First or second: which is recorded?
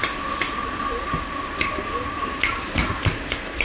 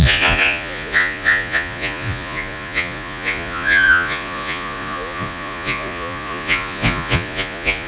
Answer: first